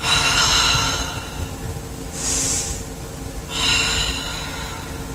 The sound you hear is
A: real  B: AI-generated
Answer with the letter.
A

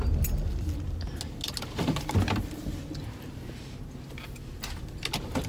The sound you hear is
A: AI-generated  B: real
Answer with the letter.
B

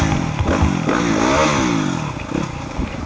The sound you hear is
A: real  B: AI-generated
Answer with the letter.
A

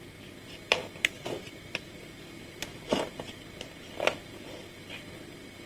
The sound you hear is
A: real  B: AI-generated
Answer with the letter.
B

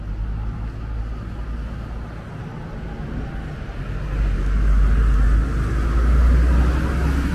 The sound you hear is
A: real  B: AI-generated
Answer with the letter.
A